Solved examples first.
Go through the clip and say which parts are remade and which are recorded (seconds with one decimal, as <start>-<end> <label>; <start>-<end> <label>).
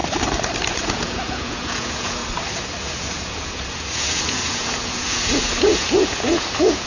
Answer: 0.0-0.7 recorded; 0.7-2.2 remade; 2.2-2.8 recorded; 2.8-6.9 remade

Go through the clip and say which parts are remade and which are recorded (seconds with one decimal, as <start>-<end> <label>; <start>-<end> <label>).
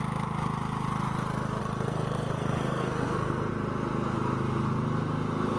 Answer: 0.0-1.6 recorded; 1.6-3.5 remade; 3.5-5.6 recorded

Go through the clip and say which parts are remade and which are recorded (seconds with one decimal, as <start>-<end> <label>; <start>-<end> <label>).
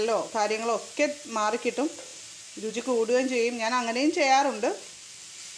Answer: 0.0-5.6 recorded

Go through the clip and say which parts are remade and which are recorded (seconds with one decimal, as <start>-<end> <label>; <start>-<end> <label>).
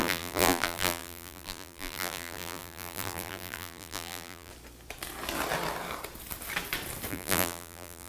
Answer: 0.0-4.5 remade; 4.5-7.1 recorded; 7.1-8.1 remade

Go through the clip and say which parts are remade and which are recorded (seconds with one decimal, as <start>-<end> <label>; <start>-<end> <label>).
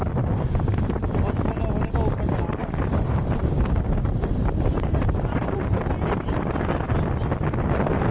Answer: 0.0-2.6 recorded; 2.6-5.8 remade; 5.8-8.1 recorded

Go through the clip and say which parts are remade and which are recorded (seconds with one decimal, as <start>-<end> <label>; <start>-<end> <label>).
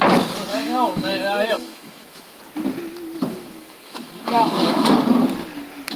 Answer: 0.0-0.5 recorded; 0.5-2.4 remade; 2.4-3.3 recorded; 3.3-4.9 remade; 4.9-6.0 recorded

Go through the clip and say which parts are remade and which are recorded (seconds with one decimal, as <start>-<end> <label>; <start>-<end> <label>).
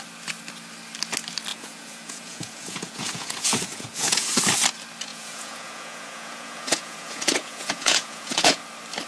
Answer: 0.0-1.5 recorded; 1.5-4.4 remade; 4.4-5.1 recorded; 5.1-8.6 remade; 8.6-9.1 recorded